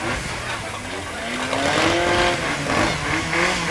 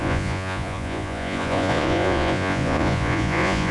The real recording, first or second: first